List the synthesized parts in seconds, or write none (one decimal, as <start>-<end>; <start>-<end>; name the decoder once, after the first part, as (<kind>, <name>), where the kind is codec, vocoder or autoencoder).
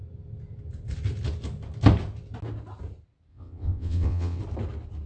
3.3-4.4 (vocoder, WaveNeXt)